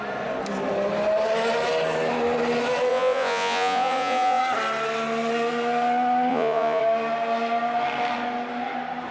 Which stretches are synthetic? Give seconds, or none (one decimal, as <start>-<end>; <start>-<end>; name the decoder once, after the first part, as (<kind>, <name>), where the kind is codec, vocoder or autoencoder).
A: 2.9-4.4 (vocoder, Vocos); 6.3-6.8